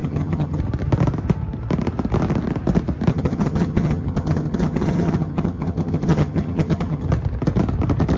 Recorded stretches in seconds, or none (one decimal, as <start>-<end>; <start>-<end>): 0.6-3.1; 7.1-8.2